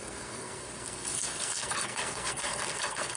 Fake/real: fake